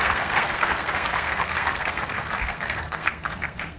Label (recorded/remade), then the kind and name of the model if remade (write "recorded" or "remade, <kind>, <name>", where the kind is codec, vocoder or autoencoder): remade, codec, SNAC